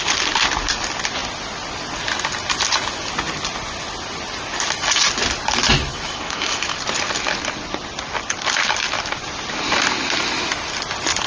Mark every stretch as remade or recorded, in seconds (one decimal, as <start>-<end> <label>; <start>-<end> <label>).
0.0-5.9 recorded; 5.9-6.8 remade; 6.8-11.3 recorded